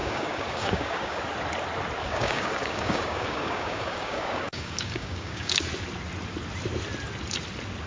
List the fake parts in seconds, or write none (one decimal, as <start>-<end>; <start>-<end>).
0.0-1.2; 2.0-5.6